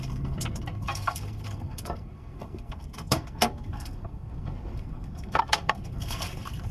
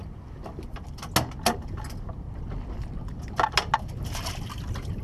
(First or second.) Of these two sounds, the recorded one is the second